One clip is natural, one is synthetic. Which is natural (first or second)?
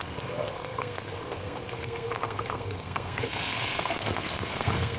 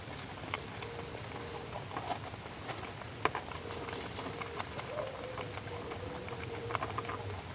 second